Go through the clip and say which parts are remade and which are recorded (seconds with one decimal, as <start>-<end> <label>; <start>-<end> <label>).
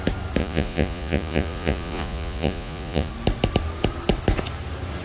0.0-0.4 recorded; 0.4-3.1 remade; 3.1-5.0 recorded